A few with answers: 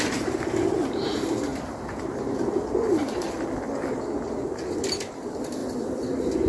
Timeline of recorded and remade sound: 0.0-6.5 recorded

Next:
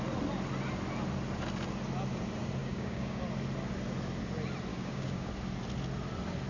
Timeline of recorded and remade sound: 0.0-2.6 recorded; 2.6-3.2 remade; 3.2-4.7 recorded; 4.7-5.3 remade; 5.3-6.5 recorded

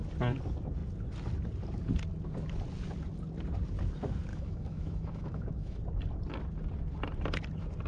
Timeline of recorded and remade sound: 0.0-4.3 recorded; 4.3-5.8 remade; 5.8-7.9 recorded

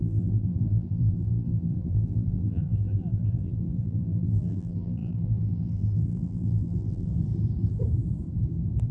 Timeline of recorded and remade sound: 0.0-7.1 remade; 7.1-8.9 recorded

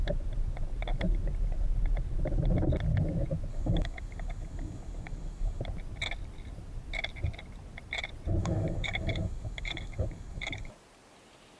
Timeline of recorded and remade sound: 0.0-3.5 recorded; 3.5-5.6 remade; 5.6-8.4 recorded; 8.4-10.7 remade; 10.7-11.6 recorded

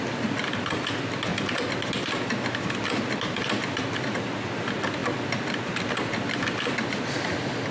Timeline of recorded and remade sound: 0.0-7.7 recorded

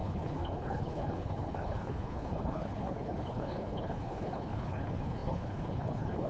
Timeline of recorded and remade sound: 0.0-6.3 remade

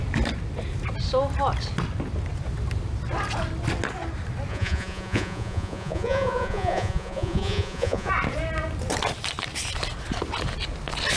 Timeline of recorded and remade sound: 0.0-4.5 recorded; 4.5-8.1 remade; 8.1-11.2 recorded